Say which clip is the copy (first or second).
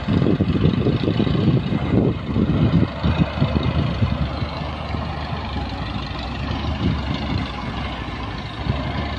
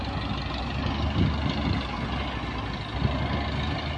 first